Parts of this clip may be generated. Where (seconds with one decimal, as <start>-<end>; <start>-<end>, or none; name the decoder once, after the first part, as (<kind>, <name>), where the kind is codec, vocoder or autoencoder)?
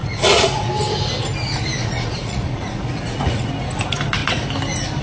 0.0-0.7 (vocoder, Vocos); 1.8-3.5